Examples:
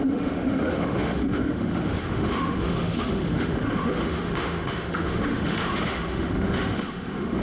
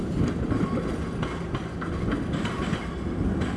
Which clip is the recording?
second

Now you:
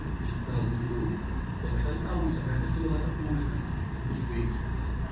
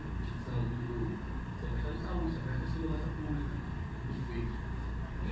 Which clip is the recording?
second